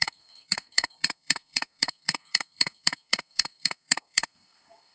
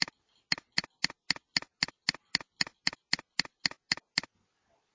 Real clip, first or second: second